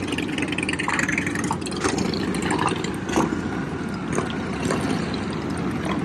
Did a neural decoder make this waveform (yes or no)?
no